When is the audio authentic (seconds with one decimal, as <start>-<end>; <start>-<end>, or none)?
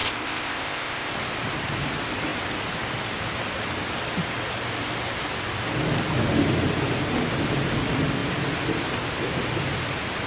1.1-10.3